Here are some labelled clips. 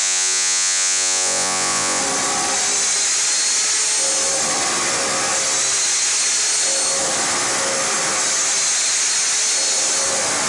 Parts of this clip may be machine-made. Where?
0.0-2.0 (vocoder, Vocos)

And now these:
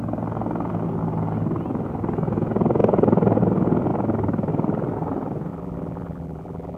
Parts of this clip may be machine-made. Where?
5.5-6.8 (vocoder, BigVGAN v2)

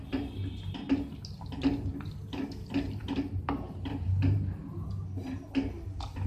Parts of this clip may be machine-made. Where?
3.0-4.6 (vocoder, BigVGAN v2)

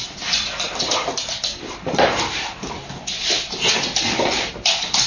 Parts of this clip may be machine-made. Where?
none

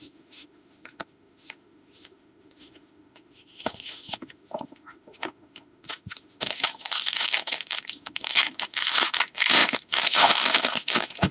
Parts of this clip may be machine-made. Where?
0.0-11.3 (autoencoder, DAC-VAE)

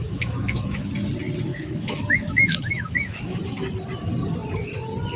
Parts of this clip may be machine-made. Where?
0.0-0.9 (autoencoder, DAC-VAE); 1.5-3.4

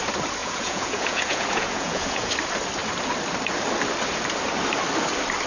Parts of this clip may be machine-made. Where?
0.4-2.3 (vocoder, Vocos)